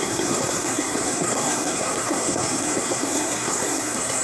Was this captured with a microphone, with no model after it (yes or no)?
no